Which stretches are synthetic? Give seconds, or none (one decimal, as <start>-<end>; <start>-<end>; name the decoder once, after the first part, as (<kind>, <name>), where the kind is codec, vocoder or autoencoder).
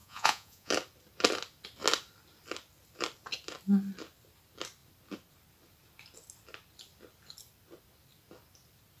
0.0-0.7 (vocoder, Vocos)